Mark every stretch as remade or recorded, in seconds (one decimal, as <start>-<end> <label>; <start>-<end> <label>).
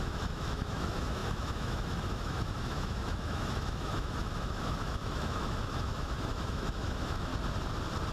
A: 0.0-7.3 remade; 7.3-8.1 recorded